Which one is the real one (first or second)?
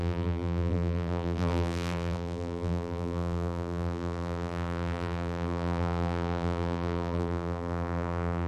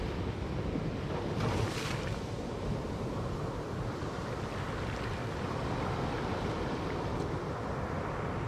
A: second